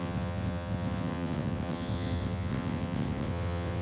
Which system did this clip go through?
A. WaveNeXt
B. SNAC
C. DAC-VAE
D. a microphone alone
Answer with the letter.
A